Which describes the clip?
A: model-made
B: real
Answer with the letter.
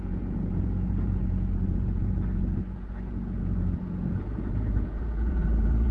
A